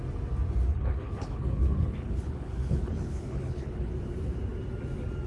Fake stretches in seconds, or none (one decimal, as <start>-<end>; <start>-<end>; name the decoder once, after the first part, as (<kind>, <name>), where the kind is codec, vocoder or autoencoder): 0.7-3.9 (codec, HILCodec)